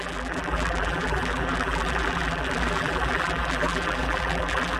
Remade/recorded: remade